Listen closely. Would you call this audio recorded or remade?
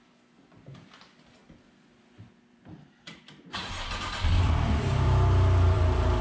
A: remade